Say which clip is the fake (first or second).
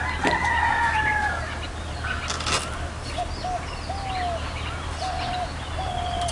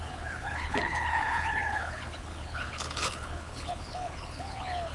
second